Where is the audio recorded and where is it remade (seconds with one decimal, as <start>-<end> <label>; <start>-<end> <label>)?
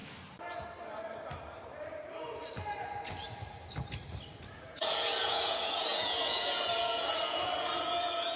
0.0-4.7 recorded; 4.7-8.4 remade